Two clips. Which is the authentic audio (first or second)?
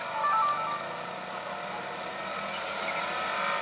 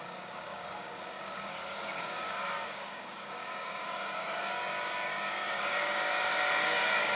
first